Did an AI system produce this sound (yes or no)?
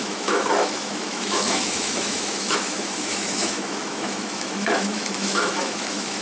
yes